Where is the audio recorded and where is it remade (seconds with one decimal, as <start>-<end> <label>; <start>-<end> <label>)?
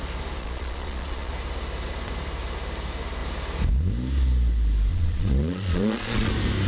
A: 0.0-0.4 recorded; 0.4-1.3 remade; 1.3-4.9 recorded; 4.9-6.3 remade; 6.3-6.7 recorded